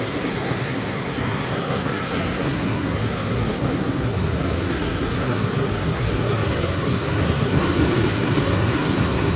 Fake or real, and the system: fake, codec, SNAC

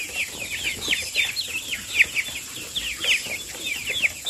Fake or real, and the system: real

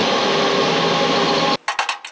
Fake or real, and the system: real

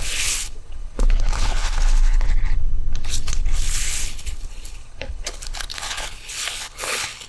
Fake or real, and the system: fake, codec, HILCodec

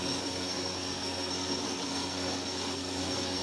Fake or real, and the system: fake, codec, SNAC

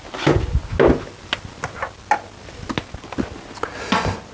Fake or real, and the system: real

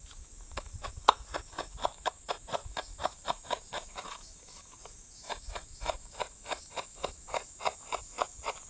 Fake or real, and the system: fake, autoencoder, DAC-VAE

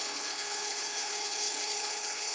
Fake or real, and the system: fake, codec, HILCodec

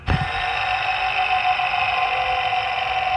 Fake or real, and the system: real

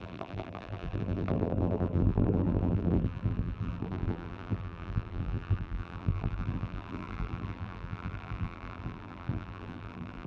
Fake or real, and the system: fake, vocoder, BigVGAN v2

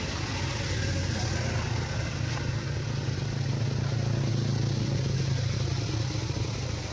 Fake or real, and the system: real